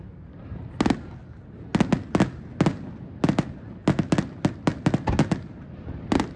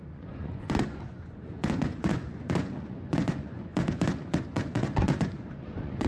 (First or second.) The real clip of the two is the first